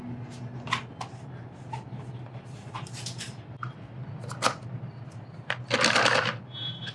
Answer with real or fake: real